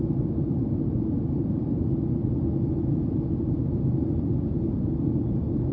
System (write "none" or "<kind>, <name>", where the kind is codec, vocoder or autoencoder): none